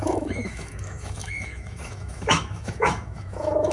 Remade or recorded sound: remade